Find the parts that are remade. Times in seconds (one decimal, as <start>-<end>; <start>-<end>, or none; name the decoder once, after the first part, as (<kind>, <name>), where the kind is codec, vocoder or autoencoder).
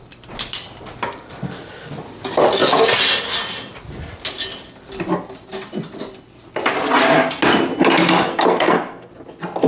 8.3-9.1 (codec, SNAC)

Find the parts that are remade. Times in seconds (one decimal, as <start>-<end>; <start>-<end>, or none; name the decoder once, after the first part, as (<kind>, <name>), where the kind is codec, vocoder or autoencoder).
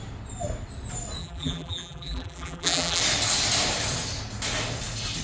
1.2-3.0 (vocoder, BigVGAN v2)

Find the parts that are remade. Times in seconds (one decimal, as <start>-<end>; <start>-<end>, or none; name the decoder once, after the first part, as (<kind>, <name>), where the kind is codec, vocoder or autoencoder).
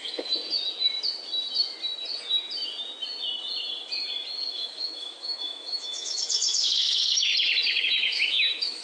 0.0-0.4 (autoencoder, DAC-VAE); 4.5-7.3; 7.8-8.8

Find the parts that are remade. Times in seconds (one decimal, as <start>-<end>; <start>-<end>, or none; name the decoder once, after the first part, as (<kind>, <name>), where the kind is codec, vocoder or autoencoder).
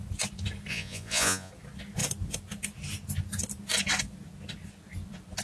0.7-1.5 (vocoder, Vocos)